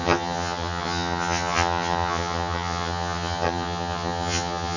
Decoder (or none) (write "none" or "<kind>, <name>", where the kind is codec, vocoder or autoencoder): vocoder, HiFi-GAN